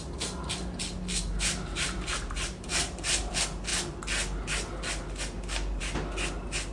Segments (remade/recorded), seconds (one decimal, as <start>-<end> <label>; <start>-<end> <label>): 0.0-1.7 recorded; 1.7-3.3 remade; 3.3-6.7 recorded